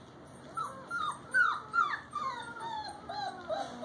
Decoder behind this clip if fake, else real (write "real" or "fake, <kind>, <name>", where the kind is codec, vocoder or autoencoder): real